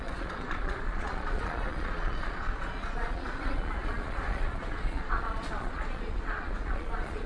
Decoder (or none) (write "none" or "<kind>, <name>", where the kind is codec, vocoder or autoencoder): vocoder, Vocos